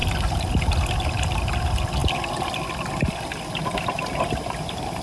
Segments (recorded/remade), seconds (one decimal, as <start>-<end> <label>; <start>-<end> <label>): 0.0-5.0 recorded